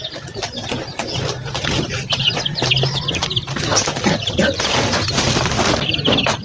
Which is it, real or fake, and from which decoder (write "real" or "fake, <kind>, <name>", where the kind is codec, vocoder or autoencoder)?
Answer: real